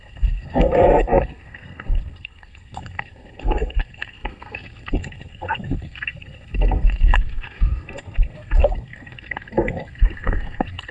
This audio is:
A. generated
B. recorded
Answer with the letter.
A